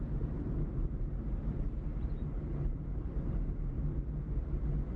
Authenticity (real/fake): real